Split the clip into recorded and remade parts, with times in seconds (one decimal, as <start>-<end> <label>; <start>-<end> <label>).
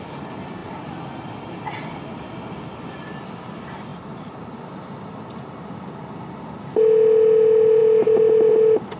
0.0-9.0 recorded